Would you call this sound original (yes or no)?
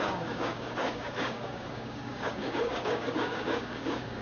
no